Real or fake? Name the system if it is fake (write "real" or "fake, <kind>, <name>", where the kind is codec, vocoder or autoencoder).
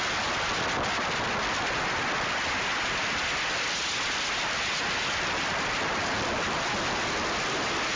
real